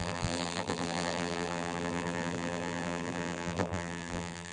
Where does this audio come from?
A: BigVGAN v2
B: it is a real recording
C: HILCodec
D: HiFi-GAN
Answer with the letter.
A